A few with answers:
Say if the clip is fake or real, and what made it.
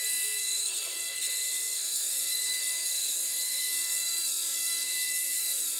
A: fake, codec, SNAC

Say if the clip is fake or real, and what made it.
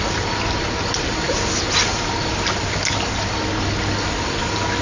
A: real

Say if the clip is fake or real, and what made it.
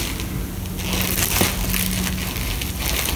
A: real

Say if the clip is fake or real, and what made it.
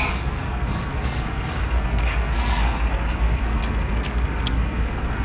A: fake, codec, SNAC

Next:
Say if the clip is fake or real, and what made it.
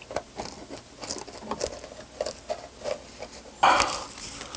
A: real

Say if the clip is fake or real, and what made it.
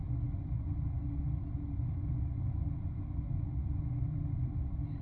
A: real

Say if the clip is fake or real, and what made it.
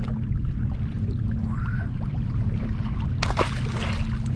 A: real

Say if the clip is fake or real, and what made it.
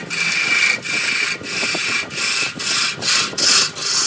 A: real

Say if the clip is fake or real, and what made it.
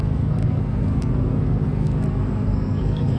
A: fake, codec, SNAC